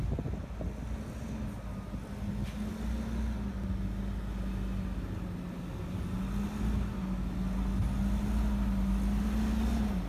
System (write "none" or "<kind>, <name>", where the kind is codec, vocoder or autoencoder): none